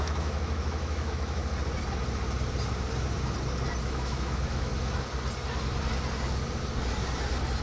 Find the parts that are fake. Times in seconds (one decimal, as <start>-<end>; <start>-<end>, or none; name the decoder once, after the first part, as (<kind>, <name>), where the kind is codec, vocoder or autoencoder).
0.0-1.4 (autoencoder, DAC-VAE); 3.8-4.7